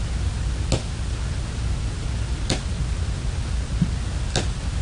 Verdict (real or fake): real